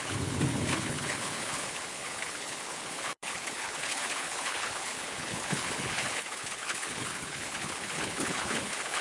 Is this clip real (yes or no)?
no